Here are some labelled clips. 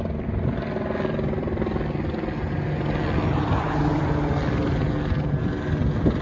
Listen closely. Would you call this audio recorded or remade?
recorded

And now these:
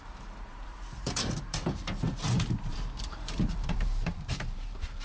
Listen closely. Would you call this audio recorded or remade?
remade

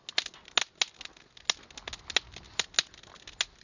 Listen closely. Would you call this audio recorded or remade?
recorded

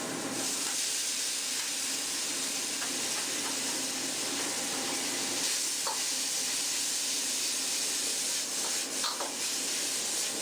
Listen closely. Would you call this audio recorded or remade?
recorded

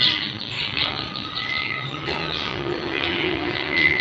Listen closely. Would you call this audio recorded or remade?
remade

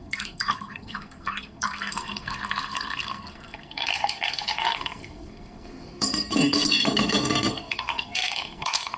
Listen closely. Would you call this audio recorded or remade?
remade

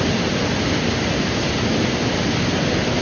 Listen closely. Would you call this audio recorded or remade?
recorded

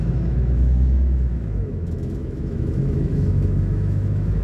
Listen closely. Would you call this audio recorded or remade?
remade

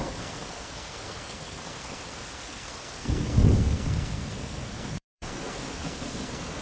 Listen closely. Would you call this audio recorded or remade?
remade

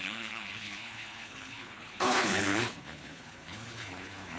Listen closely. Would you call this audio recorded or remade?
remade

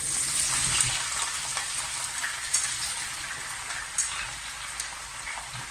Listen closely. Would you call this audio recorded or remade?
recorded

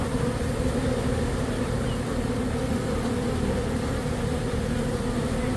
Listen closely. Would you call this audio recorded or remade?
recorded